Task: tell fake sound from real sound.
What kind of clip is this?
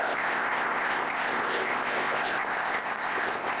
fake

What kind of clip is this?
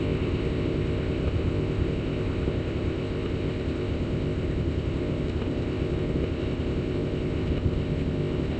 fake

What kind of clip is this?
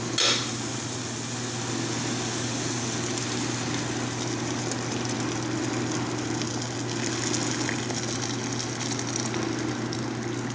real